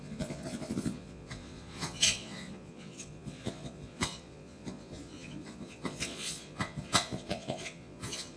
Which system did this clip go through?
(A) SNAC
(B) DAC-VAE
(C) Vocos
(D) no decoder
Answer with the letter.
C